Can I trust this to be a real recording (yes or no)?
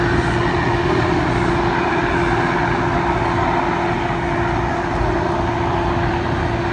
yes